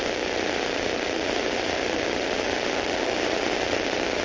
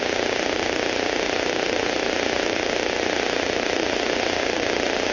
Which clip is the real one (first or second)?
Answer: second